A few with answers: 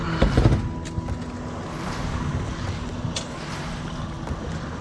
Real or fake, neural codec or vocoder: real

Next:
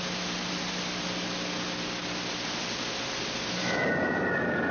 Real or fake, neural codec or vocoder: real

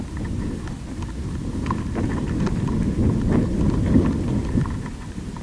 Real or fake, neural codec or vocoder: real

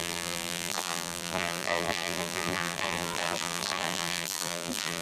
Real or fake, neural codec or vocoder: fake, vocoder, BigVGAN v2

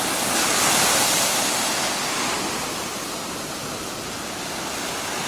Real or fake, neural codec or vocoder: real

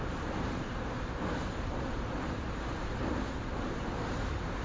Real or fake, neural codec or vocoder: fake, vocoder, BigVGAN v2